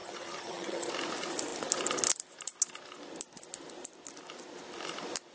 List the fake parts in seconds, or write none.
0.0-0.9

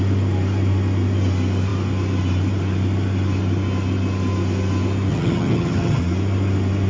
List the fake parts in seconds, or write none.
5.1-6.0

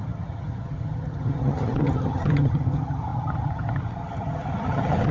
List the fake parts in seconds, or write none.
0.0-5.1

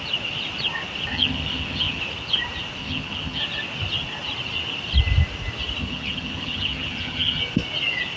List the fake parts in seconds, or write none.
1.1-2.0; 2.8-3.4; 5.8-7.4